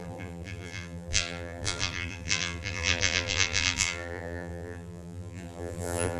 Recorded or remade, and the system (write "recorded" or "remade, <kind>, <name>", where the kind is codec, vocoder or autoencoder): remade, vocoder, BigVGAN v2